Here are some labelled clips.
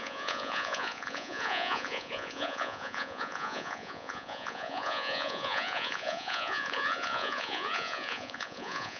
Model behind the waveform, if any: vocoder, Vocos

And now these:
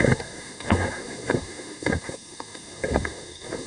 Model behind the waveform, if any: codec, SNAC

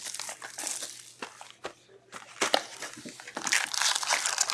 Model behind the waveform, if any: none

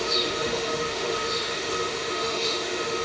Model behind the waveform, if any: autoencoder, DAC-VAE